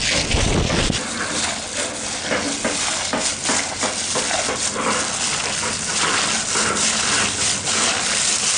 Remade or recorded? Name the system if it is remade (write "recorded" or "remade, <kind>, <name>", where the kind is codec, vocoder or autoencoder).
recorded